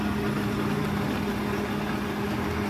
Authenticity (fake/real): real